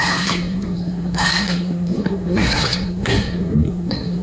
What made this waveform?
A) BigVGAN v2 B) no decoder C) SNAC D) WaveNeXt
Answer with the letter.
C